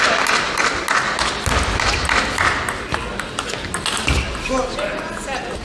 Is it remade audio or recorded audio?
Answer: recorded